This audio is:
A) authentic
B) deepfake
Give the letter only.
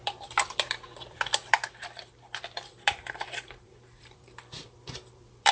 B